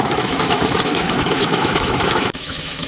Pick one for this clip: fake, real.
fake